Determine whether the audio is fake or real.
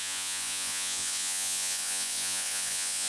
fake